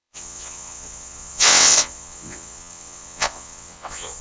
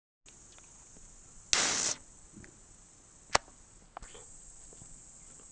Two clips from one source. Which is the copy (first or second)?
first